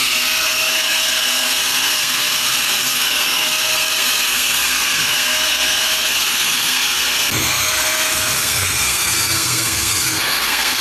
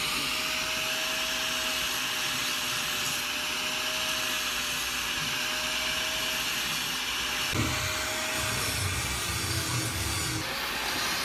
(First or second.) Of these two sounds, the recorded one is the second